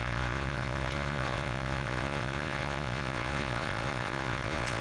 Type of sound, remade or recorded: remade